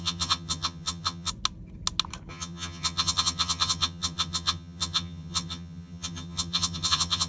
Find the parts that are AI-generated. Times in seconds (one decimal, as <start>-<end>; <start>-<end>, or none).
0.0-1.3; 2.3-7.3